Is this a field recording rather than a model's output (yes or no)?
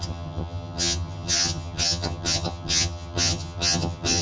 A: no